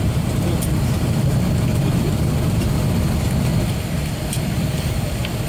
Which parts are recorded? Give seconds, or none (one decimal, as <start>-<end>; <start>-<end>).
0.0-5.5